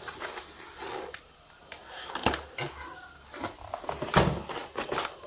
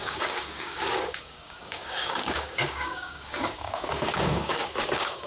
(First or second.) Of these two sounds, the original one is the first